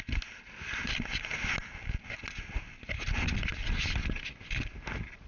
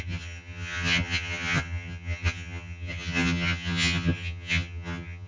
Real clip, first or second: first